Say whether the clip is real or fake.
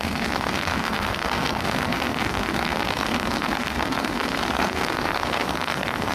fake